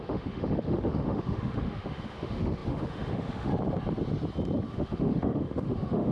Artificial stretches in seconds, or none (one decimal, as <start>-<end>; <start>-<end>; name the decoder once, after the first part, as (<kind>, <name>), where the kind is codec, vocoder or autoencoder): 0.0-3.5 (autoencoder, DAC-VAE); 4.7-6.1